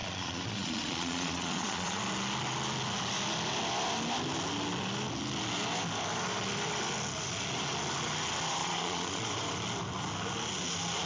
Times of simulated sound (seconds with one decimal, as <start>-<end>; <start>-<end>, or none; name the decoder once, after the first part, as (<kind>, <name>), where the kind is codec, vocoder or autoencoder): 0.0-2.0 (vocoder, Vocos); 8.6-9.3